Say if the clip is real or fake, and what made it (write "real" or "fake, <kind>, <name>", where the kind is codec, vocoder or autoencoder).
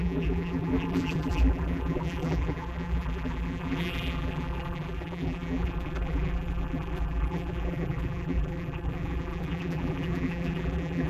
fake, vocoder, BigVGAN v2